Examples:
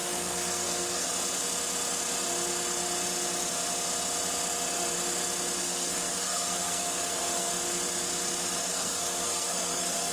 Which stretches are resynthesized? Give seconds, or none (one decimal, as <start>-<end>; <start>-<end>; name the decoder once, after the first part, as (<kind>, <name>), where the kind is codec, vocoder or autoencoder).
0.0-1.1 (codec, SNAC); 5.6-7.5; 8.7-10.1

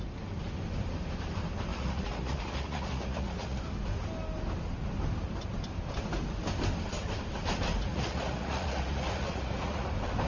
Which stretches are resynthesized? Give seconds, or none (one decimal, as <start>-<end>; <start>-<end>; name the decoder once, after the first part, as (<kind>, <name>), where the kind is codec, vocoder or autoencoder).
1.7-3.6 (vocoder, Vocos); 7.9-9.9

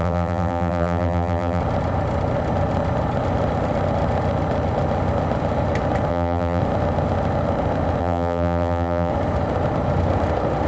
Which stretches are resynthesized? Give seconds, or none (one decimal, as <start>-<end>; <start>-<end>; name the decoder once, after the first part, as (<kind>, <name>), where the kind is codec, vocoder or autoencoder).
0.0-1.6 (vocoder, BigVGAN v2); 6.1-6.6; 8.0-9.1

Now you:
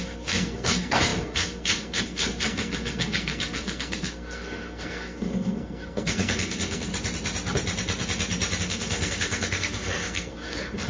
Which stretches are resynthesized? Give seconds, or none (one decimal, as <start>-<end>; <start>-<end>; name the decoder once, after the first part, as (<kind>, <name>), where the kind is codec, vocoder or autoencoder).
0.0-6.9 (codec, SNAC); 8.6-10.9

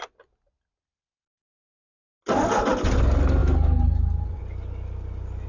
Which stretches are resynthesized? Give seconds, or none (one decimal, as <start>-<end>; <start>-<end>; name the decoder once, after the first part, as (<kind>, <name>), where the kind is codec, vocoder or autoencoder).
none